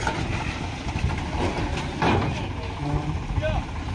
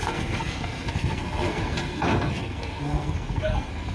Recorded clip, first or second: first